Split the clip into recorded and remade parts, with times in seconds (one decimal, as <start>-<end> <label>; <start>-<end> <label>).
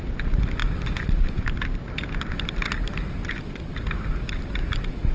0.0-5.1 recorded